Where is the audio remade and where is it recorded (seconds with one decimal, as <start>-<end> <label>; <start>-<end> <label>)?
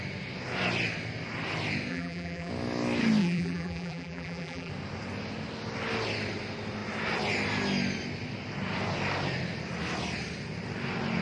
0.0-1.9 recorded; 1.9-2.5 remade; 2.5-3.2 recorded; 3.2-4.7 remade; 4.7-11.2 recorded